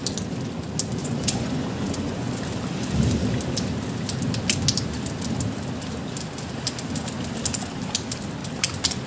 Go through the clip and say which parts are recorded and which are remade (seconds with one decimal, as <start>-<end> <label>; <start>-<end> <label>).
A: 0.0-1.0 recorded; 1.0-2.3 remade; 2.3-9.1 recorded